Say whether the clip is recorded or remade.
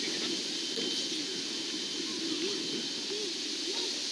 recorded